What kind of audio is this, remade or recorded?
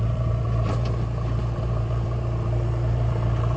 remade